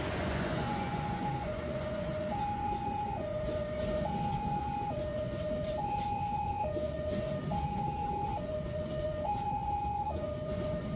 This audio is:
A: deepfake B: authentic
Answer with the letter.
A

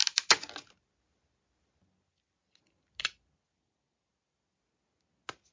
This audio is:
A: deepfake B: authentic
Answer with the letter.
B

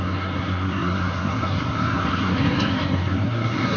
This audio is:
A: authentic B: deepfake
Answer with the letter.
B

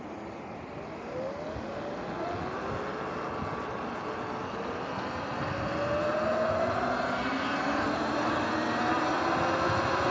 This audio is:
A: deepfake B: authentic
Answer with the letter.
B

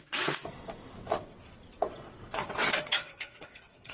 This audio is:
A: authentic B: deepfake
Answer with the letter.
B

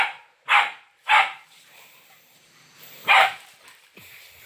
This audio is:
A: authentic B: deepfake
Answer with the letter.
B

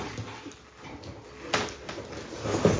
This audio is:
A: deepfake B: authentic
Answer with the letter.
B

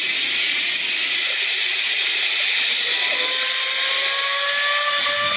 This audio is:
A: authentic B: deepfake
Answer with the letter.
A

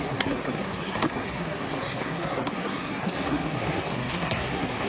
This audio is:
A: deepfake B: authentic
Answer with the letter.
A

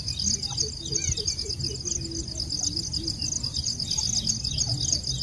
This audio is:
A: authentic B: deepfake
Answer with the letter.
A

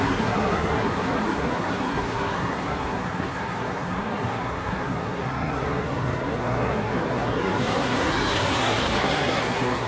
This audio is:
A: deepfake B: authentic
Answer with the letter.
A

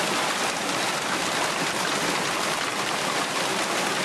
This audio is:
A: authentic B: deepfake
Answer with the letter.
A